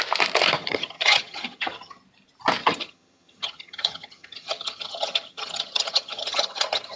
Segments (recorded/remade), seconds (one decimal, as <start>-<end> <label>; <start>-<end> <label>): 0.0-0.6 recorded; 0.6-2.0 remade; 2.0-2.6 recorded; 2.6-7.0 remade